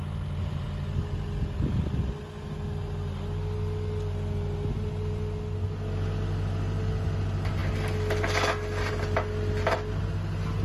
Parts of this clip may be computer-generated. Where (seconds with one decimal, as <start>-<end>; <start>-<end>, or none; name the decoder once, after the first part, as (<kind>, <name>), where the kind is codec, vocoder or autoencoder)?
none